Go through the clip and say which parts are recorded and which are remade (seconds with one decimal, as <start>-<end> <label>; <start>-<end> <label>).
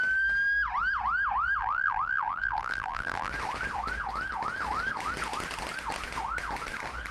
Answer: 0.0-1.6 recorded; 1.6-3.3 remade; 3.3-7.1 recorded